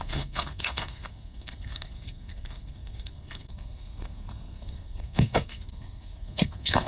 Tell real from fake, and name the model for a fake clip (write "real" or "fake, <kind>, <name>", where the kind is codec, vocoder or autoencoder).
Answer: fake, codec, SNAC